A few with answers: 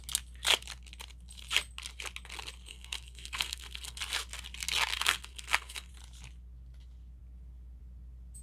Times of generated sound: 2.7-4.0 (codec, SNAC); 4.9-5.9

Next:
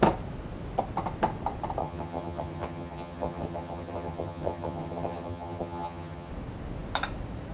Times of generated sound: 1.8-6.3 (vocoder, HiFi-GAN)